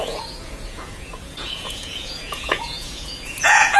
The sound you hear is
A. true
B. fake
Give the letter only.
B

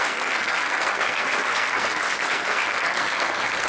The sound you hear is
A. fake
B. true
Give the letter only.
A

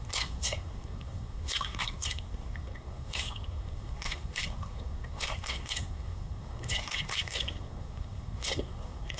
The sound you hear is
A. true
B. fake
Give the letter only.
B